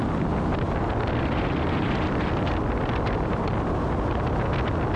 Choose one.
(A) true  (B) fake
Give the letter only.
A